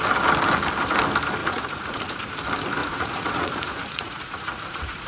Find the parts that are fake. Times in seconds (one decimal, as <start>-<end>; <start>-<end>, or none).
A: 1.4-2.2; 2.8-5.1